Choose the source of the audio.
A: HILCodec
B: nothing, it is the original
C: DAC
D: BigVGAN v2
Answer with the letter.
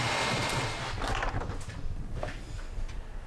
B